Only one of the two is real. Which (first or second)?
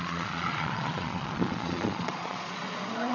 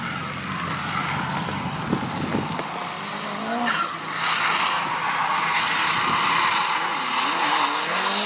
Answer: second